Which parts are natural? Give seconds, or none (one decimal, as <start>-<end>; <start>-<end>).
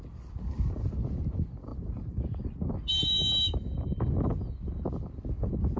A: 0.0-1.7; 3.2-5.8